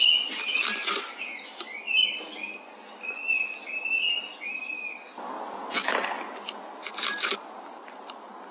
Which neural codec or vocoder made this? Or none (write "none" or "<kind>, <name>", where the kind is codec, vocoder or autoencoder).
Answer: none